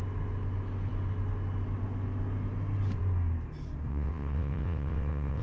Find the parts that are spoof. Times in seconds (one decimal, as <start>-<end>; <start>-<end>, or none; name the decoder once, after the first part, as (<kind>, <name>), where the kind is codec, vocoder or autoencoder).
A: 3.9-5.4 (vocoder, WaveNeXt)